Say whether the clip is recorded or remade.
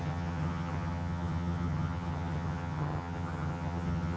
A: remade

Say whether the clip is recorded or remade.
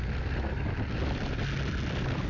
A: recorded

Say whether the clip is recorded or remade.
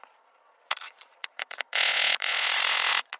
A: remade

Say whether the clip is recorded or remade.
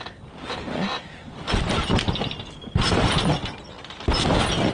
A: recorded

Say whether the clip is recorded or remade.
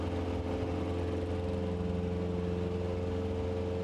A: recorded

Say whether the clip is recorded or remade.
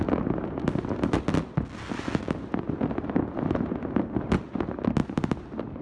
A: recorded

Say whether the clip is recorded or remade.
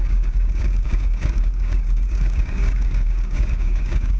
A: remade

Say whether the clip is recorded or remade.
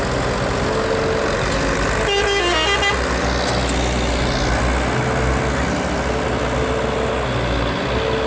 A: recorded